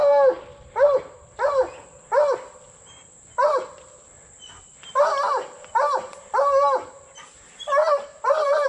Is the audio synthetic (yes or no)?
no